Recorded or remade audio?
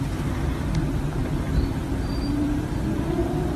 remade